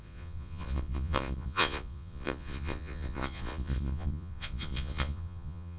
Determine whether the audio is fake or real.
fake